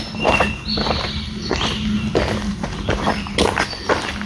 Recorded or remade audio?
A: recorded